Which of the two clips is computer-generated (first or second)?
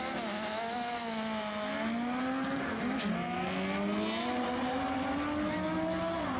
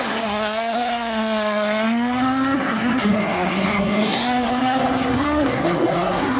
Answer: second